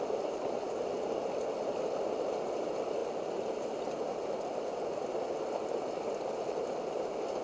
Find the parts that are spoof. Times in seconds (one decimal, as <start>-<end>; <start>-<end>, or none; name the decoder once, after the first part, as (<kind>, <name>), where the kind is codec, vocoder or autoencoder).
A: none